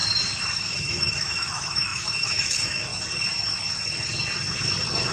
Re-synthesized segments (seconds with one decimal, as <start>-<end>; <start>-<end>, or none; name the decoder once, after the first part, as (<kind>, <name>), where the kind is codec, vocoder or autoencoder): 0.6-2.9 (autoencoder, DAC-VAE)